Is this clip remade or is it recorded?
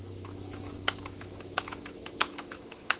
remade